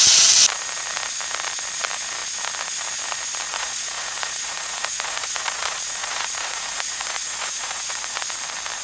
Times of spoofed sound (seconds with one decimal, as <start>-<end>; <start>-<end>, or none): 3.5-8.2